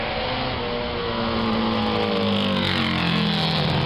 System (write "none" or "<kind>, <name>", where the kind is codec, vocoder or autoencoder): none